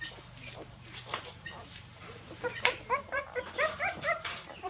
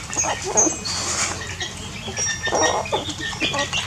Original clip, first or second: second